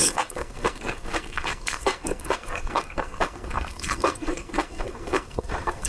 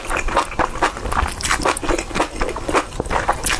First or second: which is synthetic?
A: first